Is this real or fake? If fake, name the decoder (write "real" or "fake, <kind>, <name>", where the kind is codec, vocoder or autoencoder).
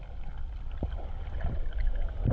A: real